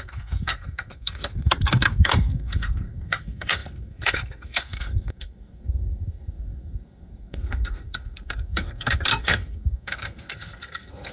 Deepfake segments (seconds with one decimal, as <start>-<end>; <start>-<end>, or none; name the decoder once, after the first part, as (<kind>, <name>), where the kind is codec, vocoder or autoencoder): 0.0-11.1 (codec, SNAC)